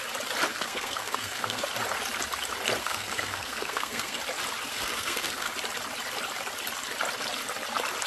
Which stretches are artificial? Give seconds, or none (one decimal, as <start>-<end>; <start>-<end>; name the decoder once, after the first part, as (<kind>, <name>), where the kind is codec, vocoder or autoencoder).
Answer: 0.5-1.6 (codec, SNAC); 2.8-4.2; 4.7-5.5